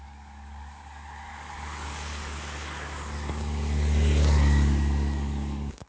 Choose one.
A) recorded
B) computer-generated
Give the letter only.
B